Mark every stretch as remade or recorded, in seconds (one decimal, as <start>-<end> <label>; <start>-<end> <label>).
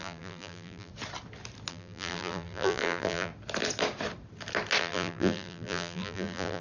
0.0-0.9 remade; 0.9-1.7 recorded; 1.7-3.3 remade; 3.3-4.8 recorded; 4.8-6.6 remade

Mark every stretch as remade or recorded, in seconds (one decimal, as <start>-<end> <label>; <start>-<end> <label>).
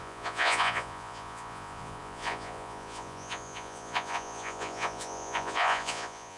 0.0-6.4 remade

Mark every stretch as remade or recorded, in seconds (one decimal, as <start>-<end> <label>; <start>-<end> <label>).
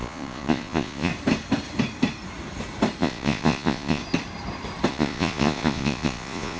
0.0-1.1 remade; 1.1-3.0 recorded; 3.0-4.0 remade; 4.0-4.9 recorded; 4.9-6.6 remade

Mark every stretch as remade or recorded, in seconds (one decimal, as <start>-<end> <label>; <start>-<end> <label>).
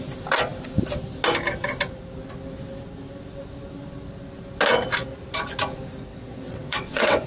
0.0-6.1 recorded; 6.1-7.3 remade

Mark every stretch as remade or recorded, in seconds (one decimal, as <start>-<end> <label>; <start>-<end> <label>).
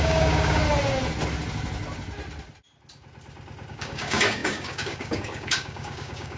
0.0-0.6 remade; 0.6-3.7 recorded; 3.7-6.4 remade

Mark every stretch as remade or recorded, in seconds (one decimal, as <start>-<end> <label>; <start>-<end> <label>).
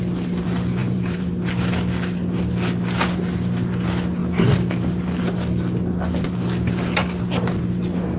0.0-0.8 recorded; 0.8-1.3 remade; 1.3-8.2 recorded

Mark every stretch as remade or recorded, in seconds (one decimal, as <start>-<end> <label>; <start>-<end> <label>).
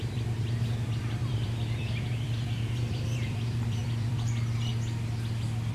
0.0-4.7 remade; 4.7-5.7 recorded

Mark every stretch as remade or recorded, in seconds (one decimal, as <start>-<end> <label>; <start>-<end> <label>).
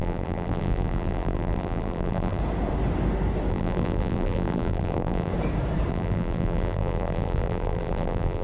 0.0-2.4 remade; 2.4-3.5 recorded; 3.5-5.3 remade; 5.3-5.9 recorded; 5.9-8.4 remade